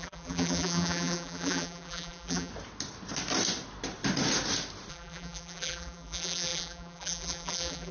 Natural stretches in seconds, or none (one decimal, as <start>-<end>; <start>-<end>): 2.5-4.9